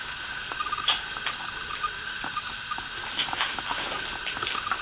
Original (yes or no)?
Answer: yes